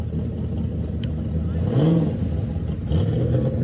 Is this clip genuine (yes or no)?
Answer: yes